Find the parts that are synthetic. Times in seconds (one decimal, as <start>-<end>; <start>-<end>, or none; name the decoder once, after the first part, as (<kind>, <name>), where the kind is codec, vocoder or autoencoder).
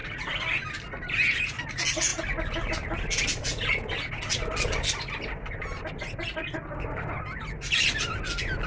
none